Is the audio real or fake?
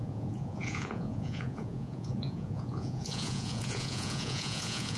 fake